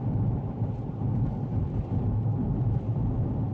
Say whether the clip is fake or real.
real